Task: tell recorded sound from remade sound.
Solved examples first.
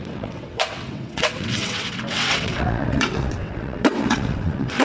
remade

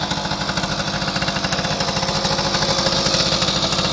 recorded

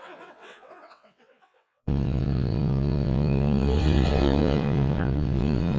remade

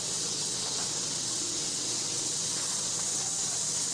remade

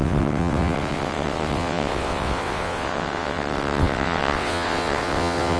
remade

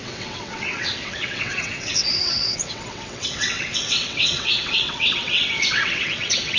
remade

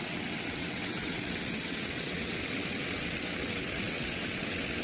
remade